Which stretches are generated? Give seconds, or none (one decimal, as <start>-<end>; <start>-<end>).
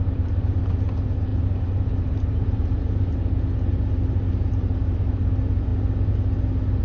0.0-5.7